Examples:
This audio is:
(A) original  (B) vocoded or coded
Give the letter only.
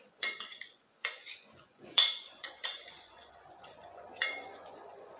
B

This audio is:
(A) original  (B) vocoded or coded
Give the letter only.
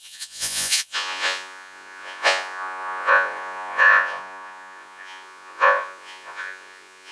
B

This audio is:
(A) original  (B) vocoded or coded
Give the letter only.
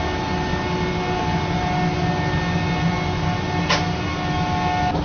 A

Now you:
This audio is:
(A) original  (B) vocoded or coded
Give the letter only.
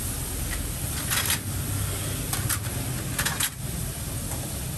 A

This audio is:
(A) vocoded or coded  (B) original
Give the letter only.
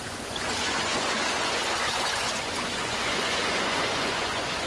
A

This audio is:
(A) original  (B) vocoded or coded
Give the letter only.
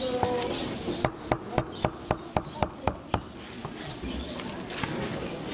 A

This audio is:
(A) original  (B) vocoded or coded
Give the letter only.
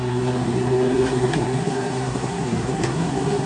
B